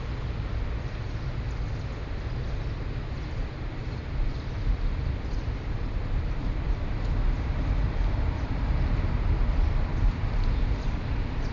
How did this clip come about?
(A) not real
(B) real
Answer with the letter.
B